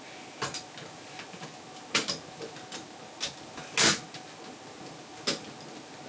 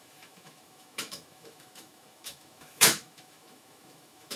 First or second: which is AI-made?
second